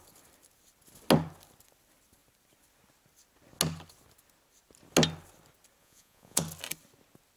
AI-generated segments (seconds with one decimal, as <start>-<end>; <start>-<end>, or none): 5.8-6.4

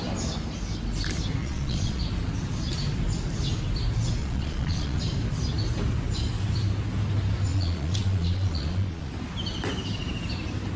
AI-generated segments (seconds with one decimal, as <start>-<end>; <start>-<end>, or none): 1.4-2.0; 4.2-5.0; 7.5-9.1

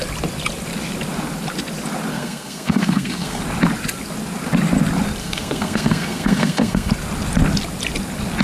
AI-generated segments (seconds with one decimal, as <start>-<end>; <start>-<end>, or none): 2.1-3.4; 5.2-6.9